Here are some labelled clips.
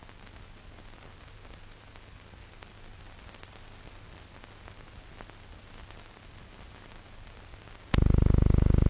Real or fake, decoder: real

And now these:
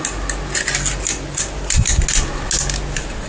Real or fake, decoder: real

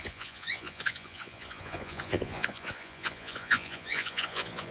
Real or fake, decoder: fake, vocoder, Vocos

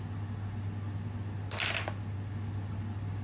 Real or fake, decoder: real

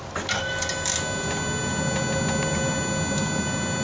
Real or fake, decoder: real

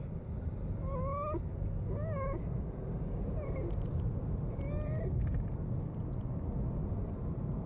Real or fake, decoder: real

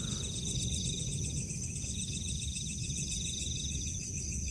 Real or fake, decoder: fake, vocoder, Vocos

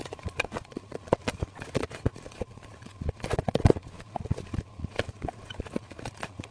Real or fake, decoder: fake, vocoder, Vocos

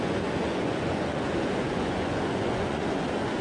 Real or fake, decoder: fake, vocoder, Vocos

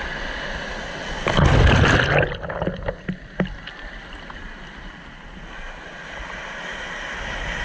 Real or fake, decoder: real